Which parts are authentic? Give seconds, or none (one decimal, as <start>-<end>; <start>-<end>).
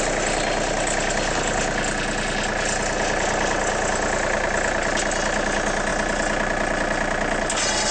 0.0-7.9